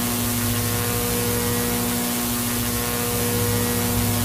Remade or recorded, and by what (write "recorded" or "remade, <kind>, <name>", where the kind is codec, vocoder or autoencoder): recorded